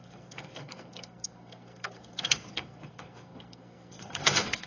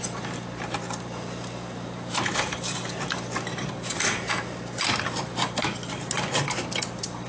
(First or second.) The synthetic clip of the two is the first